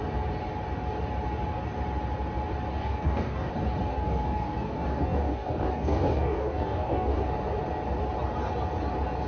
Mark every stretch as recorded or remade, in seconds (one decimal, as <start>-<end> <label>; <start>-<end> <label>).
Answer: 0.0-2.8 recorded; 2.8-3.5 remade; 3.5-3.9 recorded; 3.9-7.2 remade; 7.2-9.3 recorded